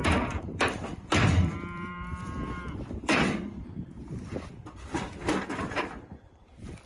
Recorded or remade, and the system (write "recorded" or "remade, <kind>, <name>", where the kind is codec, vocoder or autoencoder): remade, vocoder, BigVGAN v2